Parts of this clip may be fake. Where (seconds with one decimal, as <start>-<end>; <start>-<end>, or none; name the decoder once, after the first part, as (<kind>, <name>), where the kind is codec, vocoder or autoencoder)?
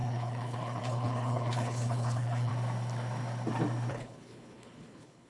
0.0-2.5 (codec, HILCodec); 3.9-5.3